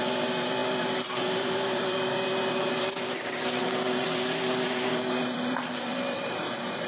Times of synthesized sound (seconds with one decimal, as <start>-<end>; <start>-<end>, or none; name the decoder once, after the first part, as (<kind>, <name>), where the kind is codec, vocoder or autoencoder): 0.0-6.9 (vocoder, BigVGAN v2)